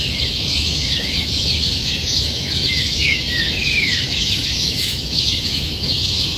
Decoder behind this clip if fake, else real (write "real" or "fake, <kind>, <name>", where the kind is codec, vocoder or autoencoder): fake, autoencoder, DAC-VAE